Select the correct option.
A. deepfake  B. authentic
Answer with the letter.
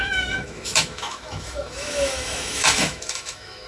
A